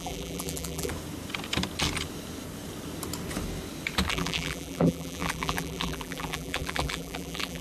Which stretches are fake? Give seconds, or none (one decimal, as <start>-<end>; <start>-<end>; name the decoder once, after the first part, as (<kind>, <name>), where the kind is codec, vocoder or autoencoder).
0.0-0.9 (vocoder, BigVGAN v2); 4.1-7.6